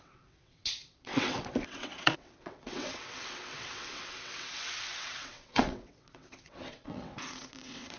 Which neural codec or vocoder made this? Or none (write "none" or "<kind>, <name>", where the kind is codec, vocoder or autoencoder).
vocoder, WaveNeXt